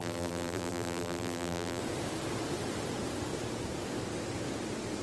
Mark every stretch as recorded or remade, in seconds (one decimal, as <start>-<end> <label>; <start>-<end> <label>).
0.0-1.8 remade; 1.8-5.0 recorded